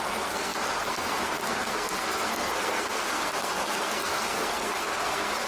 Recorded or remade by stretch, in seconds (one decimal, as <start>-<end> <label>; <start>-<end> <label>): 0.0-5.5 remade